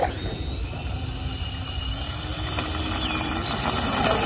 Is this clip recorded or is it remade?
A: recorded